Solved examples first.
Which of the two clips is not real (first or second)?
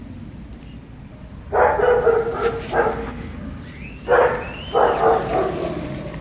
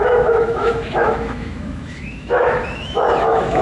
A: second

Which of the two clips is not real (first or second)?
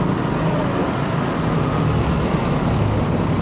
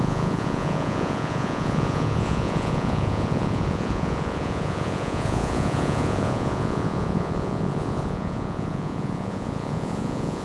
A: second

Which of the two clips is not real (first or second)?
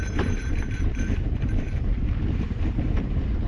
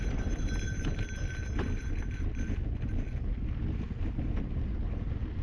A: first